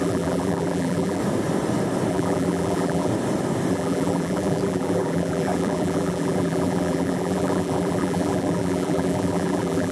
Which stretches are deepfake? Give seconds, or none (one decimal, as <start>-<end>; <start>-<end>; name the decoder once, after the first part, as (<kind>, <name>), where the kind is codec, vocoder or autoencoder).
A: 0.0-1.2 (vocoder, BigVGAN v2); 2.1-3.1; 3.7-9.9